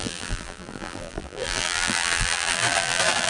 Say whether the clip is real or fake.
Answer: fake